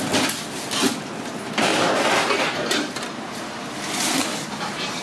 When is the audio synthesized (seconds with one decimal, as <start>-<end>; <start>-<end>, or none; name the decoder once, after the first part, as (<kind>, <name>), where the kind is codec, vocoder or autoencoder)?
1.7-3.6 (vocoder, BigVGAN v2)